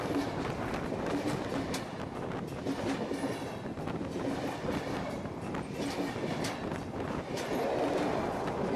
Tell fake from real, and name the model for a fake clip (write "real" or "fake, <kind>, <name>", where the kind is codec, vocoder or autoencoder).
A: real